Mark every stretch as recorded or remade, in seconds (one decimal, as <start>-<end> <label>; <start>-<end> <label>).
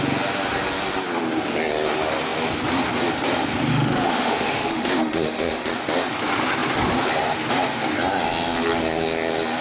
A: 0.0-3.7 recorded; 3.7-5.7 remade; 5.7-9.6 recorded